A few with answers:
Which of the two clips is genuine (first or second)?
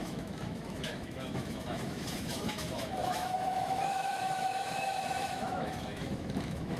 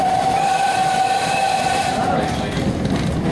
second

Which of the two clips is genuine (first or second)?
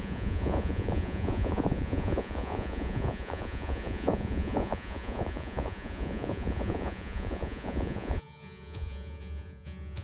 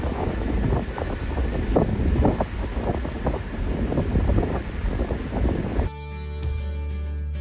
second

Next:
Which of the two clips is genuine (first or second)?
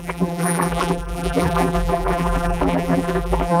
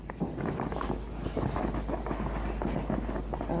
second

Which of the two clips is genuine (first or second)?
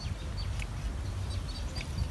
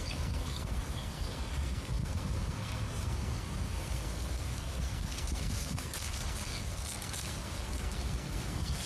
first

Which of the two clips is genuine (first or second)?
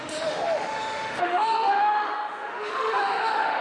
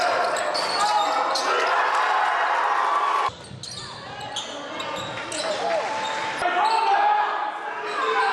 second